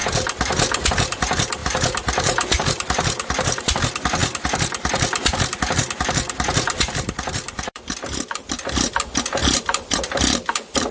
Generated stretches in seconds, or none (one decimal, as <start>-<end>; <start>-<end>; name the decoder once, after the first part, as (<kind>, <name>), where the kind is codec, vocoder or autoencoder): 1.6-3.6 (vocoder, BigVGAN v2); 4.2-9.0; 9.4-10.2